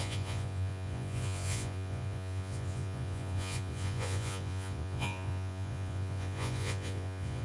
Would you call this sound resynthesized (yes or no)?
yes